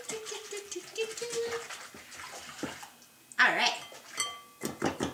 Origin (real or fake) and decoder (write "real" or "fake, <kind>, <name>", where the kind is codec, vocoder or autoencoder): real